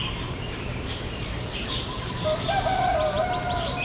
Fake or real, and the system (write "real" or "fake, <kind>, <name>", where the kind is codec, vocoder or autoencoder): fake, vocoder, BigVGAN v2